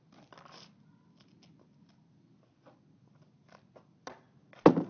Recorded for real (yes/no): yes